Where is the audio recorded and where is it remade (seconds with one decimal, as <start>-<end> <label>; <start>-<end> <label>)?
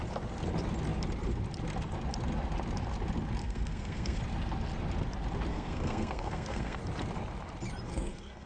0.0-3.4 recorded; 3.4-4.2 remade; 4.2-5.5 recorded; 5.5-6.8 remade; 6.8-7.9 recorded; 7.9-8.5 remade